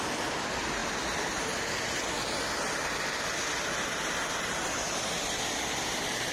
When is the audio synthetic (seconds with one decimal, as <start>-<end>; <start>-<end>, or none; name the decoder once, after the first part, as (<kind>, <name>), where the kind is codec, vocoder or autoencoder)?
none

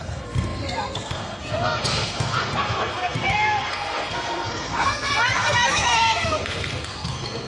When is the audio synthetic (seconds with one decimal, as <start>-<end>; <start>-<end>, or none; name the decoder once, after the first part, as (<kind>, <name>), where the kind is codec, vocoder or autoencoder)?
0.0-7.5 (codec, SNAC)

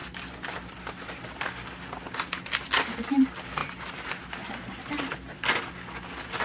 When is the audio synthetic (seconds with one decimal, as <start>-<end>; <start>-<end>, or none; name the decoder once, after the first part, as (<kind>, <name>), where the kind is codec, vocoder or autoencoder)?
none